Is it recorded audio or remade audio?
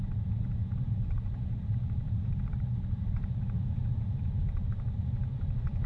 remade